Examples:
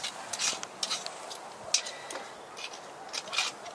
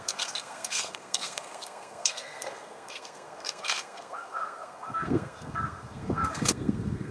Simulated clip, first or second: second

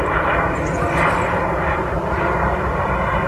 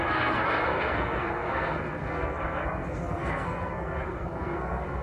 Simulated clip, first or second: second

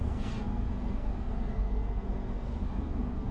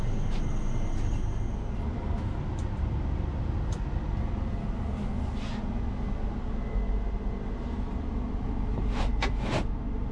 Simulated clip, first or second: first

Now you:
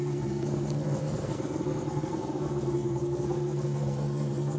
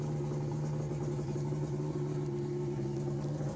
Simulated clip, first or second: first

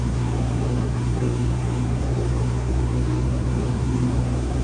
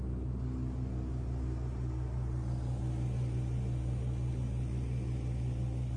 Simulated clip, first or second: first